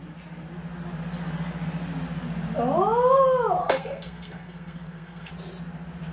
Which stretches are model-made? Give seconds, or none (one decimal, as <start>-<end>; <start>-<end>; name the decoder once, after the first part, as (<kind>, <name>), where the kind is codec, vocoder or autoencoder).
3.6-5.3 (codec, SNAC)